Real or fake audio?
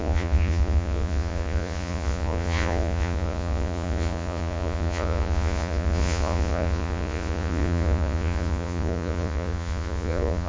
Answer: fake